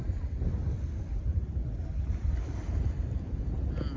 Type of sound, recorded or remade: remade